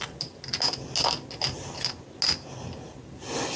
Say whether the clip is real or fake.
real